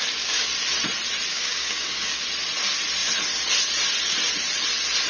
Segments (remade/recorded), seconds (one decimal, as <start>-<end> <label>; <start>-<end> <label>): 0.0-0.5 remade; 0.5-1.3 recorded; 1.3-2.2 remade; 2.2-5.1 recorded